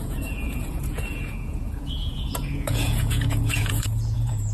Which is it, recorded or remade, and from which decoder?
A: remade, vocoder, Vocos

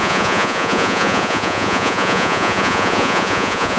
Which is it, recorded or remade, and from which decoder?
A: remade, vocoder, Vocos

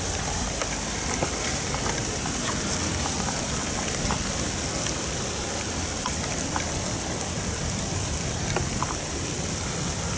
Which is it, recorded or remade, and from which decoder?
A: remade, vocoder, BigVGAN v2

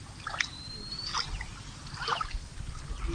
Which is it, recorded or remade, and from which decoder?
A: recorded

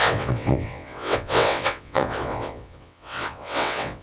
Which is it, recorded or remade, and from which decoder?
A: remade, vocoder, WaveNeXt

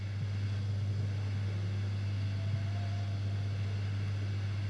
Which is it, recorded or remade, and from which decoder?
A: recorded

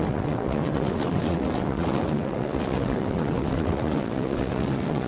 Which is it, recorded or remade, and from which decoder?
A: remade, vocoder, WaveNeXt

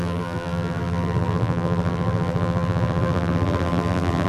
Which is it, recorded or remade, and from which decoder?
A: remade, vocoder, BigVGAN v2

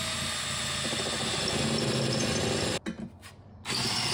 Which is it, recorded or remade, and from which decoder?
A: recorded